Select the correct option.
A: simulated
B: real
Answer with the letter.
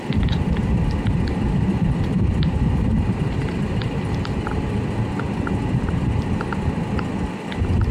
B